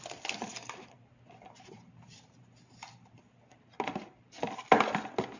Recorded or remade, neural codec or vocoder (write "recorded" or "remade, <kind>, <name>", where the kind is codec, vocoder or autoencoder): recorded